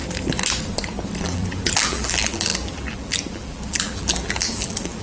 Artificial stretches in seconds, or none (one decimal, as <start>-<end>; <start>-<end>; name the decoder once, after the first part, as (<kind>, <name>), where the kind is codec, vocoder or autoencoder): 1.2-5.0 (vocoder, BigVGAN v2)